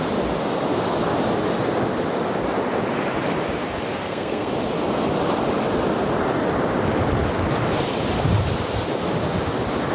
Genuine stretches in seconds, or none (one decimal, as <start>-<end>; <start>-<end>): 0.0-3.9; 4.5-9.9